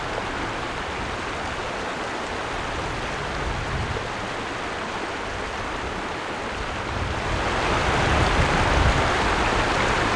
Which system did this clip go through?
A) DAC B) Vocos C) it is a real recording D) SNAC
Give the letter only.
C